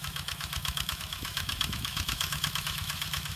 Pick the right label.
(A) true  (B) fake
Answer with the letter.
B